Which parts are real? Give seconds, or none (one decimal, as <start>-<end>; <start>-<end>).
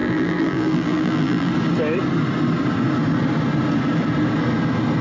1.5-5.0